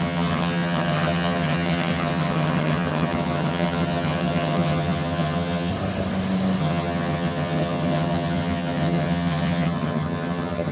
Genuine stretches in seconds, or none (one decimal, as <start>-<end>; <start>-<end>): 5.7-6.6